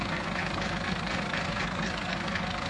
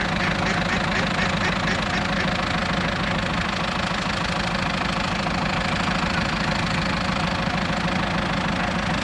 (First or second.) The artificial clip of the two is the first